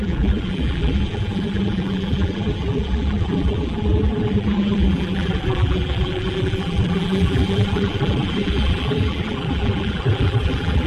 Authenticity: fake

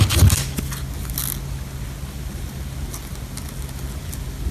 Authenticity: real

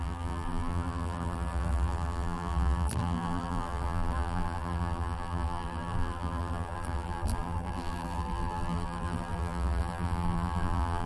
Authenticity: fake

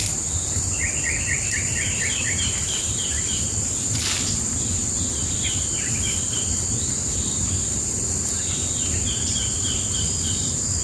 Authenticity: fake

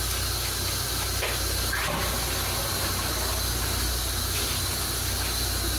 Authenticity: real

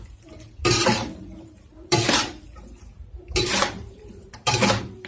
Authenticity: fake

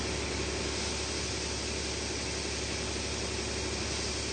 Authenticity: real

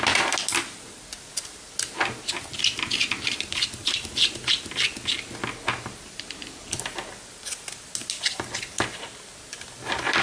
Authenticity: real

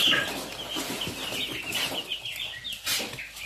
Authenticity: real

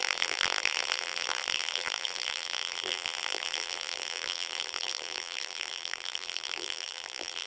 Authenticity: fake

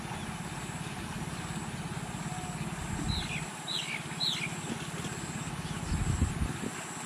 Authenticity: real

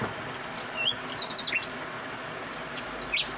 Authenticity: real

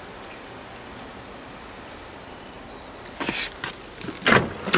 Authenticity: real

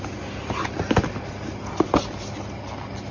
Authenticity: real